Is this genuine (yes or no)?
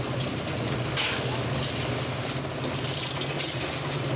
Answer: yes